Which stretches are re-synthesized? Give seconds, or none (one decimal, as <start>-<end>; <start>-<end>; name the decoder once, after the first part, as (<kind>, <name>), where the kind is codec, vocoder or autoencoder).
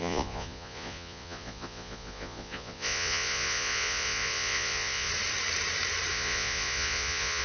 0.0-5.1 (vocoder, Vocos); 6.1-7.4